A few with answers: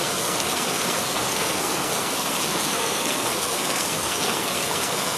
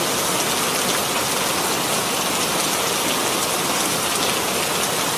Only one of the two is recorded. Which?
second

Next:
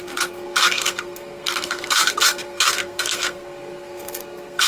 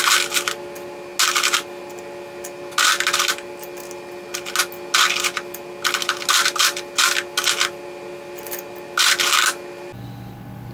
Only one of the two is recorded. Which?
second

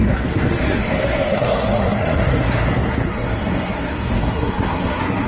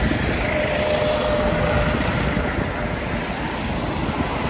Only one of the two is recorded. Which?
second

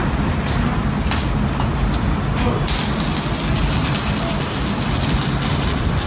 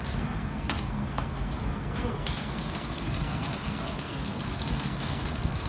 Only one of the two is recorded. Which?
first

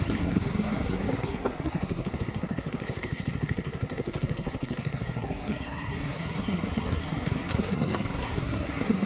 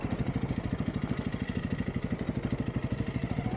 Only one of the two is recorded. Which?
second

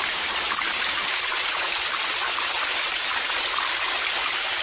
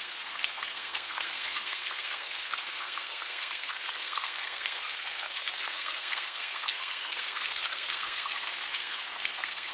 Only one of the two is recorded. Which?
first